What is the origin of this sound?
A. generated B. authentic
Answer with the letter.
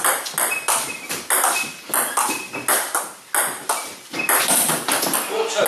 B